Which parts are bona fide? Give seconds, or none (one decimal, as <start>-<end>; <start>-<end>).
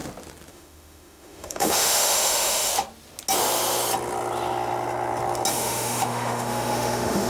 0.0-0.5; 2.7-5.5